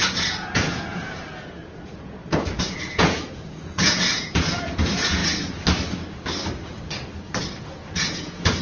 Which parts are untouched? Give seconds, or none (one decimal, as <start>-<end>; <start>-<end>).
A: 5.2-7.6